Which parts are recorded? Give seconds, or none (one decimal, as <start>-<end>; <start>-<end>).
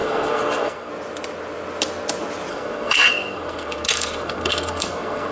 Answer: 0.9-2.5